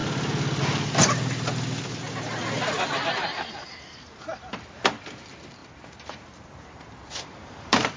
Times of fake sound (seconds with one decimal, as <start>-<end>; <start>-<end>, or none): 5.6-8.0